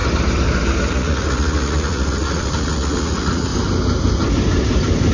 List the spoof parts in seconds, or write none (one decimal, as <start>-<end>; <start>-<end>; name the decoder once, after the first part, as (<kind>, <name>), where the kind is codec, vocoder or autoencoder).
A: 0.9-3.5 (vocoder, Vocos)